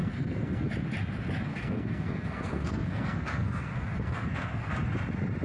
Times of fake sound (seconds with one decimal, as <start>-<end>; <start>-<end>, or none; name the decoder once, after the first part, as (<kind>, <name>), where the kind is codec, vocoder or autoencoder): 0.0-0.7 (codec, SNAC); 1.5-4.7